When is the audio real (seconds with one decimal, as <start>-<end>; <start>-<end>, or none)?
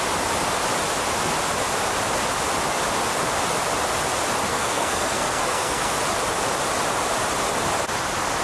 0.0-4.5; 6.0-8.4